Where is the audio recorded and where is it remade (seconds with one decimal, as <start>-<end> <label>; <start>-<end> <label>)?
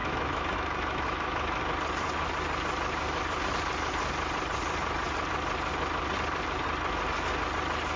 0.0-1.6 remade; 1.6-8.0 recorded